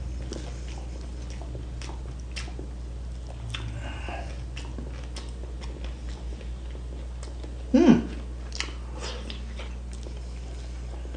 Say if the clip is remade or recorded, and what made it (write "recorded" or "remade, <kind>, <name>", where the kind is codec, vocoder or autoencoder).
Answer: recorded